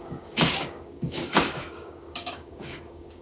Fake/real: fake